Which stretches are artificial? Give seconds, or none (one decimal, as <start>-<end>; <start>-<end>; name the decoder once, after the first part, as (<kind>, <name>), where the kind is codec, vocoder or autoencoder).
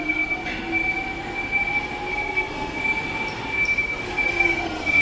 0.0-0.4 (codec, SNAC); 2.1-2.8; 4.3-5.0